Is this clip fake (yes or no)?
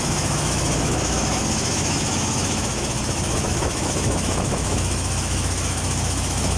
yes